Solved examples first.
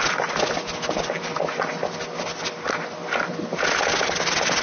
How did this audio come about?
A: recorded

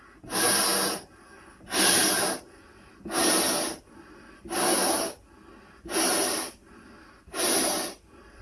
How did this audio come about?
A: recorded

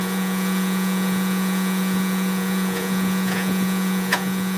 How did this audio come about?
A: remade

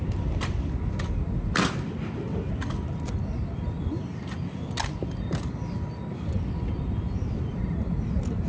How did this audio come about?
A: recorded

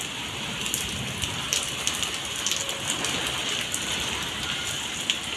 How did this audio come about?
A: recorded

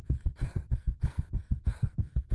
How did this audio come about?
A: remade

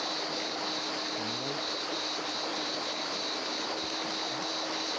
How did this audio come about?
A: recorded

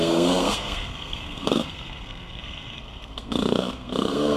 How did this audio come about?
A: remade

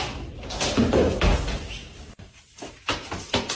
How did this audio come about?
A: recorded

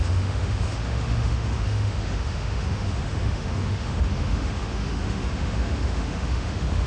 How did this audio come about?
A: remade